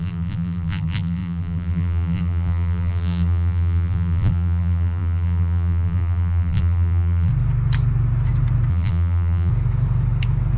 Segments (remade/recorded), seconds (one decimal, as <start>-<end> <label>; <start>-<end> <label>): 0.0-7.3 remade; 7.3-8.7 recorded; 8.7-9.5 remade; 9.5-10.6 recorded